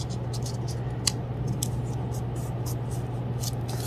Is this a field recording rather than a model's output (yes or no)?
yes